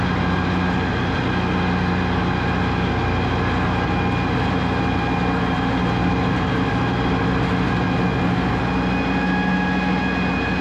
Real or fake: real